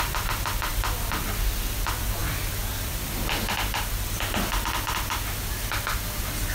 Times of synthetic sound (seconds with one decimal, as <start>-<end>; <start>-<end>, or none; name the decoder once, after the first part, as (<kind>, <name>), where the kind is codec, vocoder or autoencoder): 2.2-3.2 (vocoder, BigVGAN v2)